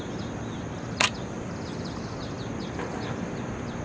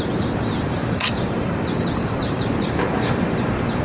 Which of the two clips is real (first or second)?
first